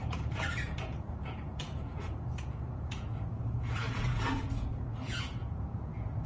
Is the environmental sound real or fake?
fake